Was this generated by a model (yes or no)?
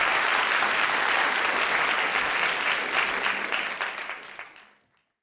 no